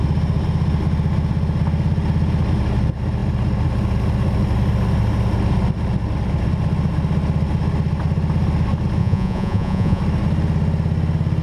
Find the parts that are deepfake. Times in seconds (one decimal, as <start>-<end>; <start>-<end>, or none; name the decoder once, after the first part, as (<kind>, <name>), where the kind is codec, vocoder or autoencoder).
9.0-10.0 (vocoder, Vocos)